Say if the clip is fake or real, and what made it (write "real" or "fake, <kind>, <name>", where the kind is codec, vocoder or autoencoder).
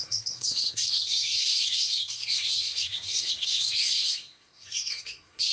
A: fake, codec, SNAC